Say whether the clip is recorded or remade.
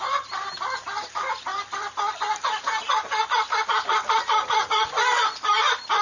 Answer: recorded